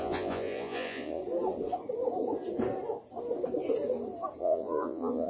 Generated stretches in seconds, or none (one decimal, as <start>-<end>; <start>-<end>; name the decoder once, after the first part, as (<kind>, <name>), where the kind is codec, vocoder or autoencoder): 0.0-1.2 (vocoder, Vocos); 4.4-5.3